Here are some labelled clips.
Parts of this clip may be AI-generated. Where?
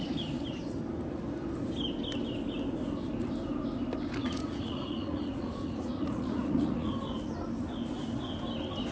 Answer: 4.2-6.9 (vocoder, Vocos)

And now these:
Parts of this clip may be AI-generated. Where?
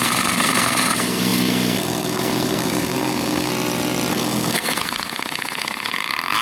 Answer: 0.0-3.5 (codec, SNAC); 4.1-6.4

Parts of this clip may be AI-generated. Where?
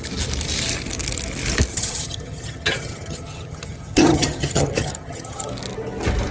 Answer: 1.7-5.5 (vocoder, HiFi-GAN)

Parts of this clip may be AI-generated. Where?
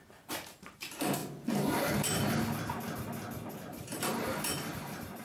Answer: 0.0-1.2 (vocoder, BigVGAN v2); 3.5-3.9; 4.7-5.2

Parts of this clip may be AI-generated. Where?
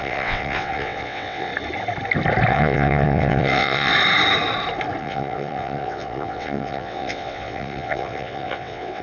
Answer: 0.0-1.5 (vocoder, WaveNeXt); 2.5-3.9; 5.0-9.0